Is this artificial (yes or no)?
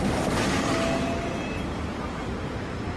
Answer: no